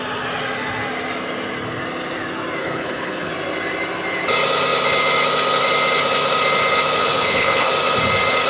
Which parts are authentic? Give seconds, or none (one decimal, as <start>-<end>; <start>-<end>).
0.0-2.6; 3.3-7.0; 7.7-8.5